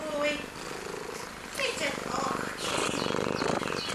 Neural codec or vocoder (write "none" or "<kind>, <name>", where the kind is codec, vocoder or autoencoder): none